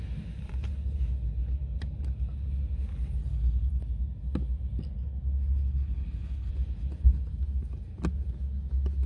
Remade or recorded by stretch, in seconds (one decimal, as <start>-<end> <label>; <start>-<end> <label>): 0.0-3.2 recorded; 3.2-3.8 remade; 3.8-5.7 recorded; 5.7-6.5 remade; 6.5-9.1 recorded